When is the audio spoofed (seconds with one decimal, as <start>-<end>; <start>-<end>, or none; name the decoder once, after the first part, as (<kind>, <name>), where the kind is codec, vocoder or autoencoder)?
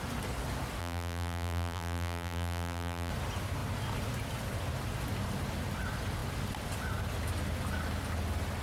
0.8-3.1 (vocoder, BigVGAN v2)